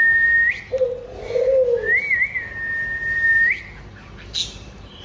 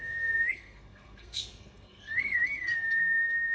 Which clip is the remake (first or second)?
second